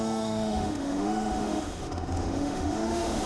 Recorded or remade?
remade